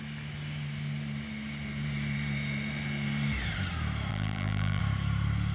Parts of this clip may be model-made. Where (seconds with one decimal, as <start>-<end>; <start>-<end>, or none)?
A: 4.1-4.8